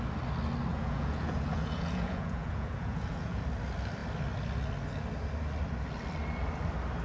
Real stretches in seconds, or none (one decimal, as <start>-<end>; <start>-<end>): 0.0-0.7; 3.4-7.0